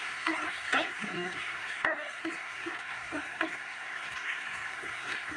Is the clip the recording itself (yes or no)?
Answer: no